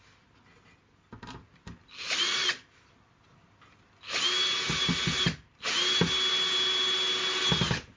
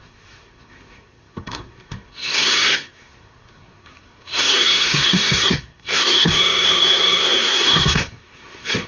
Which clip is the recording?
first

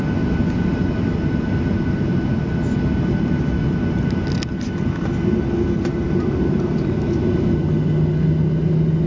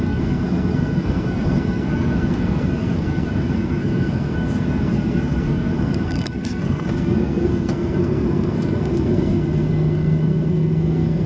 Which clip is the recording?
first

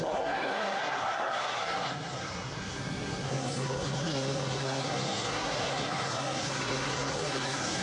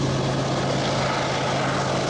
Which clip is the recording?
second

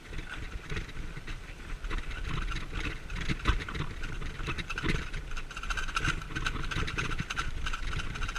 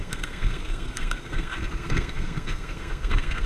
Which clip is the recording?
first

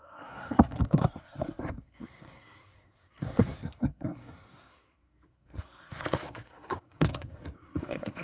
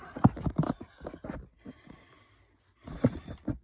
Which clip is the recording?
second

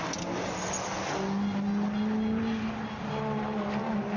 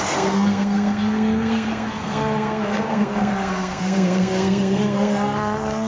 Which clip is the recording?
first